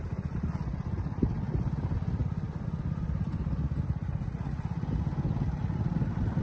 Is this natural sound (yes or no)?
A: yes